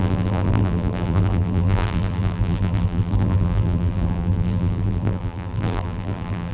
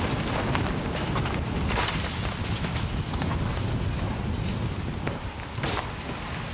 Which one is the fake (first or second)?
first